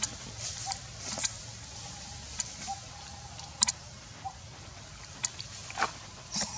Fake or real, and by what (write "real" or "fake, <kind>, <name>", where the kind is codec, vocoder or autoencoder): real